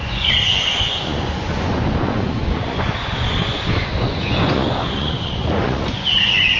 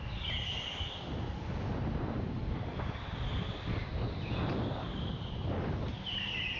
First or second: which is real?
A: second